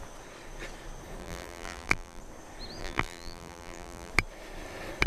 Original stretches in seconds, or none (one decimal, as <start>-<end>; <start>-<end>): 0.0-1.2; 2.2-2.8; 4.1-5.1